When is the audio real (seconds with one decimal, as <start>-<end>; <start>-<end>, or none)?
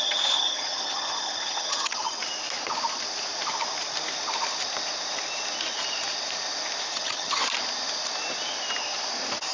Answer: 2.2-6.9; 7.4-9.5